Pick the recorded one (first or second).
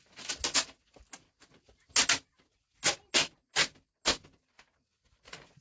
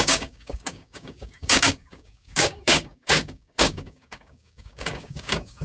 first